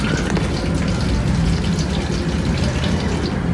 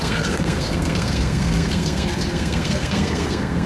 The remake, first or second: second